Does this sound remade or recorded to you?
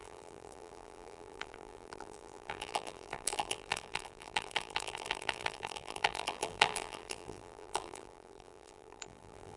remade